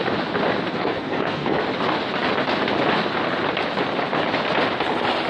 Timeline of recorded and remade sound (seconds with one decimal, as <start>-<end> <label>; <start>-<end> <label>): 0.0-0.7 recorded; 0.7-1.6 remade; 1.6-5.3 recorded